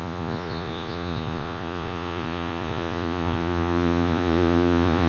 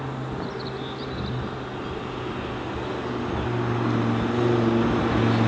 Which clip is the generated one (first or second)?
first